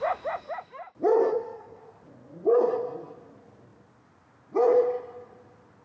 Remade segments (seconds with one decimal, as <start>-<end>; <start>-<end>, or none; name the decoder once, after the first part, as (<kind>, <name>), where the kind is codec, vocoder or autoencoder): 1.2-1.8 (codec, SNAC)